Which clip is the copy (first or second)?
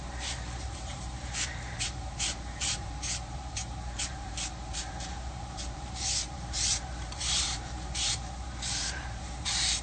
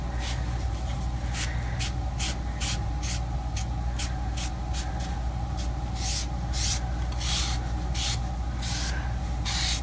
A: first